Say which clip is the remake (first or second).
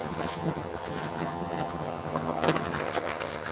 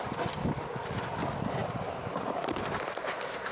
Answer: first